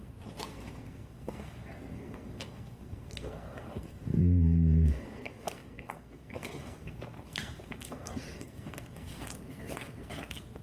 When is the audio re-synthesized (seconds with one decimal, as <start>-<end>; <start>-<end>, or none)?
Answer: 0.0-10.6